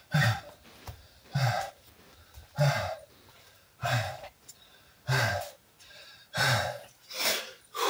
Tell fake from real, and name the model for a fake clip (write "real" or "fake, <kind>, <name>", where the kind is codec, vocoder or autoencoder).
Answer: fake, vocoder, BigVGAN v2